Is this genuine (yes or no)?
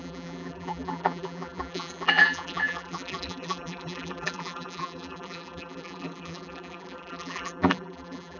no